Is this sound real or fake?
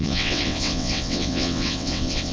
fake